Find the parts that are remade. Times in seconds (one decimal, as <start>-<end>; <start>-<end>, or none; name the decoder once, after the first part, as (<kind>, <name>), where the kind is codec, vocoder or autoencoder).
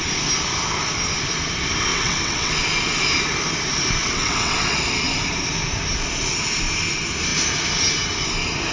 1.9-2.6 (vocoder, WaveNeXt); 4.0-4.8